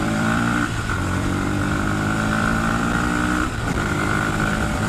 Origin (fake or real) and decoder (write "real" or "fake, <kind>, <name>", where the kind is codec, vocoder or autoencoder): fake, vocoder, BigVGAN v2